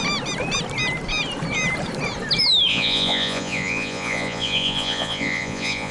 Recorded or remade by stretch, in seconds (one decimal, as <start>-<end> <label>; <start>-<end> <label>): 0.0-2.7 recorded; 2.7-5.9 remade